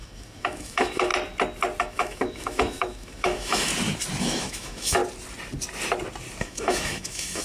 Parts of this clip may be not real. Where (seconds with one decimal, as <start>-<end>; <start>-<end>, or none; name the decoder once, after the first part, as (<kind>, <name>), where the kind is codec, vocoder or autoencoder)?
0.0-1.1 (autoencoder, DAC-VAE); 1.8-3.7; 4.2-5.0; 6.4-7.4